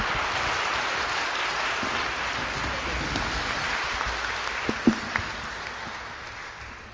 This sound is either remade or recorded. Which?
recorded